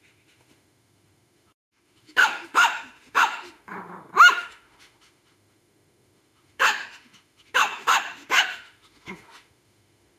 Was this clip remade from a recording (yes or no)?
yes